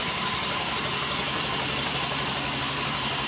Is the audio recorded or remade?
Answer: recorded